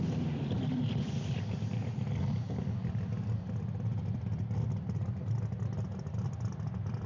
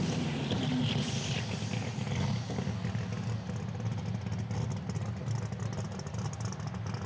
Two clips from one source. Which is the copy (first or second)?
first